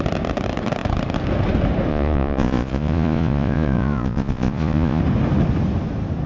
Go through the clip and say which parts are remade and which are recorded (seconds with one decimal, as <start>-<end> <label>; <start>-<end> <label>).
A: 0.0-1.9 recorded; 1.9-5.0 remade; 5.0-6.3 recorded